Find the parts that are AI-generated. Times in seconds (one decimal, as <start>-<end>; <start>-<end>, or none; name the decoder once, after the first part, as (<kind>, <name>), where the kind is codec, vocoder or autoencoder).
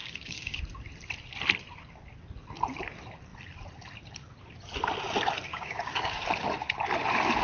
0.0-0.6 (codec, DAC); 5.5-6.2